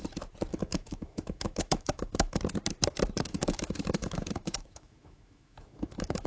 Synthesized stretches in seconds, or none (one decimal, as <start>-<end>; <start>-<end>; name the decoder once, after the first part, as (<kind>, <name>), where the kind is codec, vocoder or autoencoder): 0.5-2.4 (autoencoder, DAC-VAE); 3.3-6.3